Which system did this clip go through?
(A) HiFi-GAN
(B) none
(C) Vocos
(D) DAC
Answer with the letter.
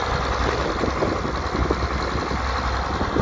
B